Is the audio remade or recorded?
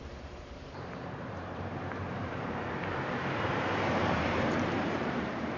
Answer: remade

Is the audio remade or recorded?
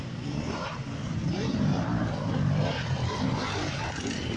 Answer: remade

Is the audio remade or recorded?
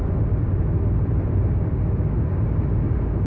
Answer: recorded